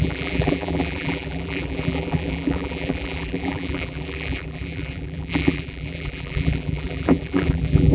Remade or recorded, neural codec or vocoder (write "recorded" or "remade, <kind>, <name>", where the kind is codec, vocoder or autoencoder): remade, vocoder, BigVGAN v2